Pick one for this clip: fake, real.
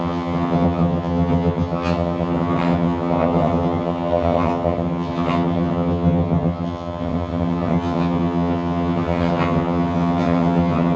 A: fake